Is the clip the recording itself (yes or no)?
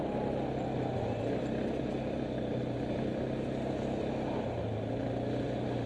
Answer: yes